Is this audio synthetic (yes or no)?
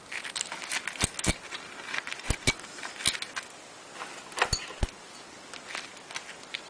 no